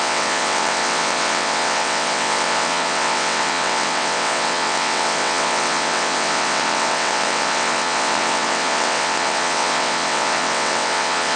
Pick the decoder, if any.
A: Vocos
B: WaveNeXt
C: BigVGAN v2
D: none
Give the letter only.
B